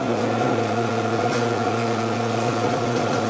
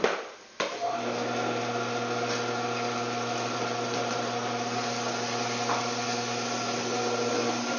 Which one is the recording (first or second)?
second